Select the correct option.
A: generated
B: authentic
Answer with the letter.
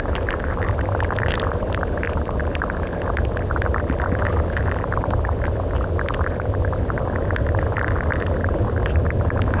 B